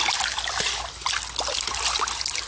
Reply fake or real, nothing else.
real